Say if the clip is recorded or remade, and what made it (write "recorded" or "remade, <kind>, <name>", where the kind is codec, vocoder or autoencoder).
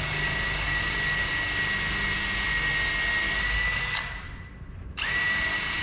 recorded